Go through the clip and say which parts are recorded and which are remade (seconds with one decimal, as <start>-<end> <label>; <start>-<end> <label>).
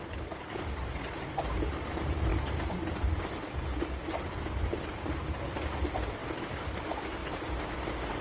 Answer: 0.0-8.2 recorded